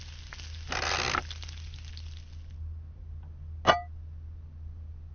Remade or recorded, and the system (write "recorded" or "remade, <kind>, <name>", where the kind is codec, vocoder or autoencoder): recorded